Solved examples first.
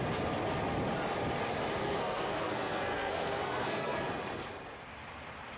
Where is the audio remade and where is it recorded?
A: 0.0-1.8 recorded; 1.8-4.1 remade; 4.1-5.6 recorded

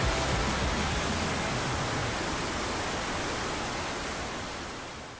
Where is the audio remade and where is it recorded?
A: 0.0-5.2 recorded

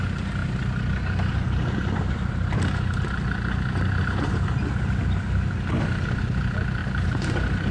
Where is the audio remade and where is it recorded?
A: 0.0-0.4 recorded; 0.4-4.4 remade; 4.4-6.8 recorded; 6.8-7.7 remade

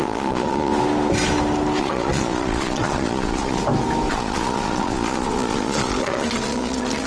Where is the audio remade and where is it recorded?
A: 0.0-0.7 remade; 0.7-1.8 recorded; 1.8-3.6 remade; 3.6-4.1 recorded; 4.1-7.1 remade

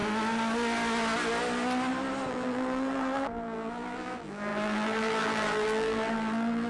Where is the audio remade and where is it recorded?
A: 0.0-2.3 recorded; 2.3-6.7 remade

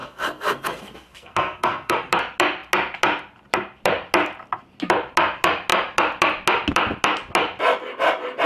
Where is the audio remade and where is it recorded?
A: 0.0-2.0 remade; 2.0-8.5 recorded

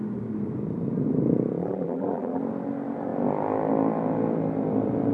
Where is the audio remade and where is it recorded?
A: 0.0-1.6 recorded; 1.6-2.4 remade; 2.4-5.1 recorded